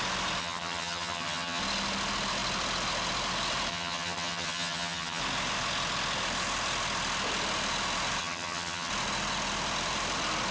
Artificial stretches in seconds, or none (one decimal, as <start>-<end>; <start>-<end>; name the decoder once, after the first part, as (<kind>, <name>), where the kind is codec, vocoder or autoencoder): 0.4-1.6 (vocoder, HiFi-GAN); 3.7-5.2; 8.2-8.9